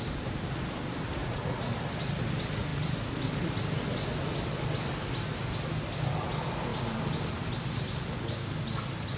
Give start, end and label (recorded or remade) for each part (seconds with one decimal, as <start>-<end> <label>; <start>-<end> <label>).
0.0-1.2 recorded; 1.2-1.7 remade; 1.7-9.2 recorded